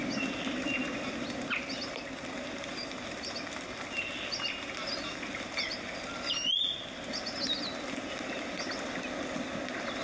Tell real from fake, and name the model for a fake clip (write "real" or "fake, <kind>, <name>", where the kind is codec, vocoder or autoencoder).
real